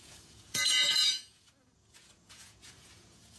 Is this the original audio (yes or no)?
no